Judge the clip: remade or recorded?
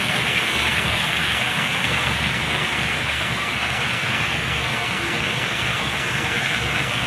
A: remade